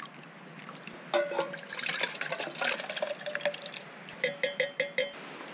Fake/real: real